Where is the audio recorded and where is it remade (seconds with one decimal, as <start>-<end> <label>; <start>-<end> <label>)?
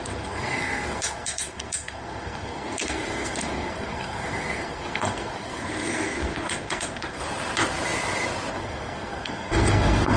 0.0-7.2 remade; 7.2-8.5 recorded; 8.5-10.2 remade